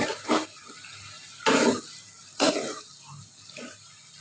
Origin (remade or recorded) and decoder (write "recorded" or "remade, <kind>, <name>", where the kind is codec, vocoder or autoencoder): recorded